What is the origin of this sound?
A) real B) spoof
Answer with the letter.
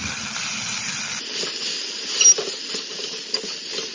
A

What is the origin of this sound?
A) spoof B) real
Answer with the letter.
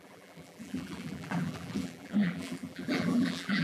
A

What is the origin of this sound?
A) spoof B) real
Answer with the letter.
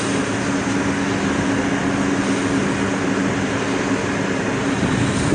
B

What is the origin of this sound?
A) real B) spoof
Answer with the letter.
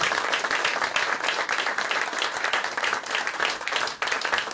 B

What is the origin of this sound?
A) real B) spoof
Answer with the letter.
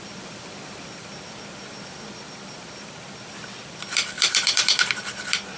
B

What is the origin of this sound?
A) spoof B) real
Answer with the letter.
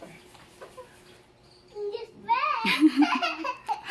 B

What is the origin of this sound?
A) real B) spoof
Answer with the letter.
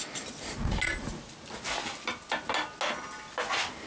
A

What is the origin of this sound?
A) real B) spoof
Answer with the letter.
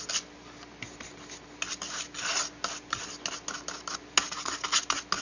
A